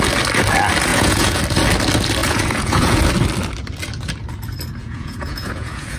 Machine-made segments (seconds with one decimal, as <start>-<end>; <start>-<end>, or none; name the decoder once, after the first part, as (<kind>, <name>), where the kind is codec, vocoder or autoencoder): 0.9-1.4 (vocoder, Vocos); 2.2-3.0; 4.8-6.0

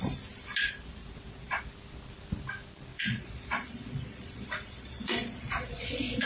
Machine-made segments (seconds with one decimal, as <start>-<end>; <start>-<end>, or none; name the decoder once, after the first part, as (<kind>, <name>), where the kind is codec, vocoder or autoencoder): 1.0-1.6 (vocoder, Vocos); 2.9-6.3

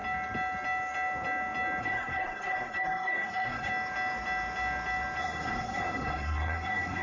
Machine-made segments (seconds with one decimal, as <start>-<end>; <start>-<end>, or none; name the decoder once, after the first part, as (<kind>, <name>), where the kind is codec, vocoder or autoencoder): 1.8-3.7 (codec, SNAC); 5.2-7.0

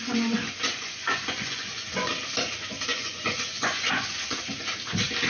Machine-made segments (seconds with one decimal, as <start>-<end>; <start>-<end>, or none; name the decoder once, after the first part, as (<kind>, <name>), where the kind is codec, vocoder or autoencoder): 0.7-2.1 (vocoder, Vocos); 2.9-4.4

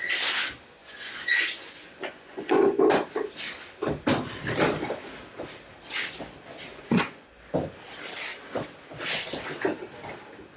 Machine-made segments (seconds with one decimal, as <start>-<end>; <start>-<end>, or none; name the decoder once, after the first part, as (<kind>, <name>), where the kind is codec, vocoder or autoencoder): 0.8-2.8 (vocoder, Vocos); 6.7-7.3

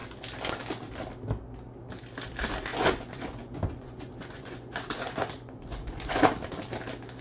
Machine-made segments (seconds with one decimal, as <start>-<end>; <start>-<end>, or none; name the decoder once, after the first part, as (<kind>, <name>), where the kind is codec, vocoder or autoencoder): 2.7-6.2 (vocoder, Vocos)

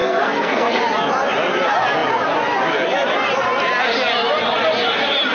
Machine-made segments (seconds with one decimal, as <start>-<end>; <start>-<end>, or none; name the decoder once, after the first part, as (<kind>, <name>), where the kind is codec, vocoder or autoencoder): 0.0-0.8 (codec, SNAC)

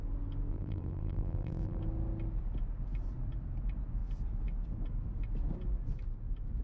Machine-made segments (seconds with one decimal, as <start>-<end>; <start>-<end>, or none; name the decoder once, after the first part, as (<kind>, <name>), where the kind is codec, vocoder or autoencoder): 0.5-1.8 (vocoder, BigVGAN v2)